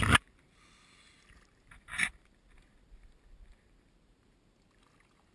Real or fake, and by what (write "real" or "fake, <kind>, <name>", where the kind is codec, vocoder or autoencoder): real